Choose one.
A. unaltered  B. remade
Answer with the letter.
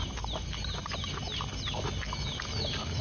A